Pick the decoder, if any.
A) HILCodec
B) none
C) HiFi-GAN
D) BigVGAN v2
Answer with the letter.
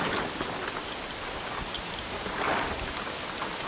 B